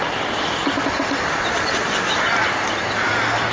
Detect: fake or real real